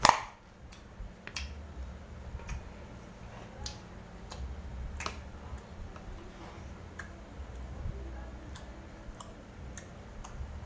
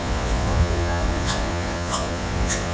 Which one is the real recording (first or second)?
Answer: first